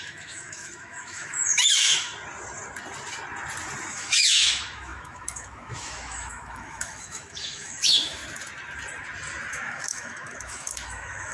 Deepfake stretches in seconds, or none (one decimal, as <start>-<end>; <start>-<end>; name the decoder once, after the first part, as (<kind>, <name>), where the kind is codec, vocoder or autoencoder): 0.0-2.1 (autoencoder, DAC-VAE); 3.9-8.2; 9.5-11.3